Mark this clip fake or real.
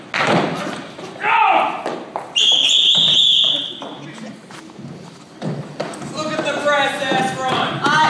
real